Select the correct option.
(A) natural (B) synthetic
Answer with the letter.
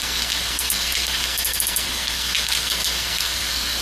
B